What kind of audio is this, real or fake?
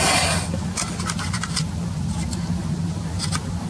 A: real